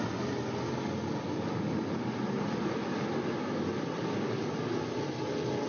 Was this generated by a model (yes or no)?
no